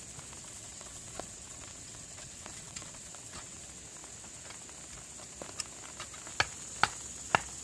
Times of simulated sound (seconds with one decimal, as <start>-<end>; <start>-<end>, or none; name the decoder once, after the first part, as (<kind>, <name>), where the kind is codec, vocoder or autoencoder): 0.4-3.6 (vocoder, WaveNeXt)